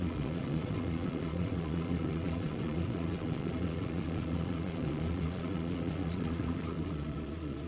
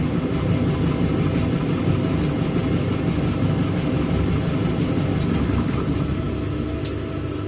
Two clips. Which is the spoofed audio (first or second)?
first